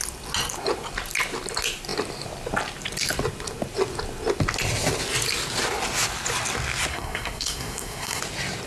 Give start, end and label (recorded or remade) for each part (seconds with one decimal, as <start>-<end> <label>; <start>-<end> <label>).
0.0-6.9 recorded; 6.9-8.2 remade; 8.2-8.7 recorded